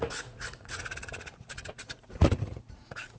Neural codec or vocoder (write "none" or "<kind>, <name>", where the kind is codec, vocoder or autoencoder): vocoder, Vocos